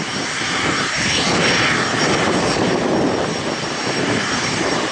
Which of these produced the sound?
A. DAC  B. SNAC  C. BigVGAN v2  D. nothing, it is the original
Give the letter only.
C